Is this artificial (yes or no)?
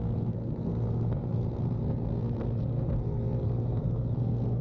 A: yes